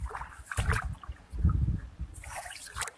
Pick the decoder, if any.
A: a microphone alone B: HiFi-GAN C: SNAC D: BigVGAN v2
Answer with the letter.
A